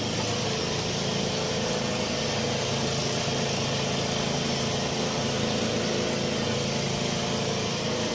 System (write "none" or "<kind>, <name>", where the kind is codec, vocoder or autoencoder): none